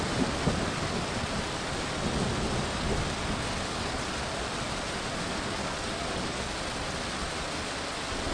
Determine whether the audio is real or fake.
real